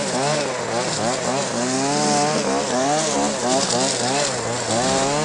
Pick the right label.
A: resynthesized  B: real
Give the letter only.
B